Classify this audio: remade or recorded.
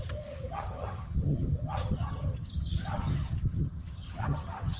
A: remade